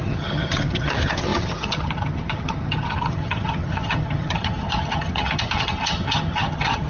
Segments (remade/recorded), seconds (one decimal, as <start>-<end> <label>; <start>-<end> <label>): 0.0-6.9 remade

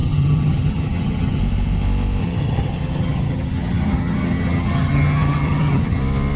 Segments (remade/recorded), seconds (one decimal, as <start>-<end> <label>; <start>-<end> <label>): 0.0-1.4 remade; 1.4-2.2 recorded; 2.2-6.0 remade; 6.0-6.4 recorded

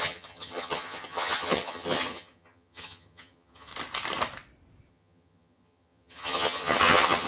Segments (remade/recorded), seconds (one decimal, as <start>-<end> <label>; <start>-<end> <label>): 0.0-3.7 remade; 3.7-4.9 recorded; 4.9-7.3 remade